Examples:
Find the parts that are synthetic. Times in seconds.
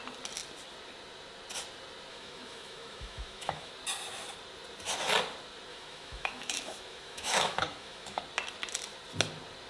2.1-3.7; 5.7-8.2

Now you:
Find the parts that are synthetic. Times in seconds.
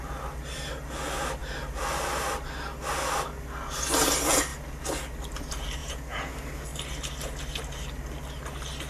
5.8-6.3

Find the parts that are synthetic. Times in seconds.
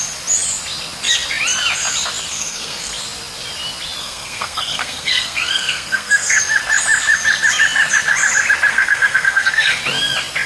2.3-2.9; 4.0-6.4; 8.7-9.8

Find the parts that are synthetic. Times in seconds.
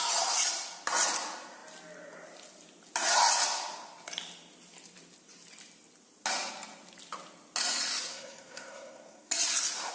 8.1-9.3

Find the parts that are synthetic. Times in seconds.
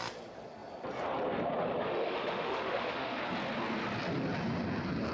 1.9-3.2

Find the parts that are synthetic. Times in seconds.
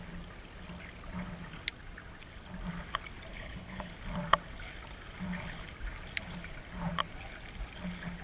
3.3-3.9